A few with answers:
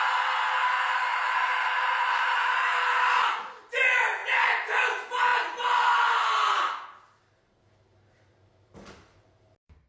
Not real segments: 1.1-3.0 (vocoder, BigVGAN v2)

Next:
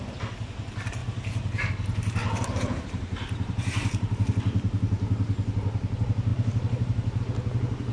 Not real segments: 1.0-1.7 (vocoder, BigVGAN v2); 2.2-4.3; 6.3-7.2